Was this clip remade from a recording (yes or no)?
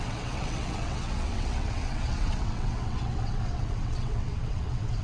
yes